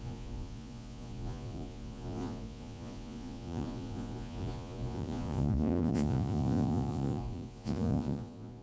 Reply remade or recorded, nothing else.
remade